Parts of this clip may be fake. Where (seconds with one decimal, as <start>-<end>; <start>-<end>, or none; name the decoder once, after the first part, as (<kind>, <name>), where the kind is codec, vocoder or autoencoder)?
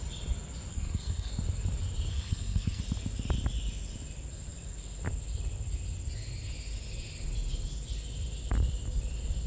0.7-1.3 (codec, SNAC); 2.1-2.8